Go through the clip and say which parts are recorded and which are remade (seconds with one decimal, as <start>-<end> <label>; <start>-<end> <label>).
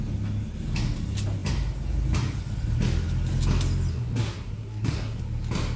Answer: 0.0-3.9 recorded; 3.9-5.2 remade; 5.2-5.8 recorded